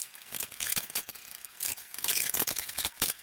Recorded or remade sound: remade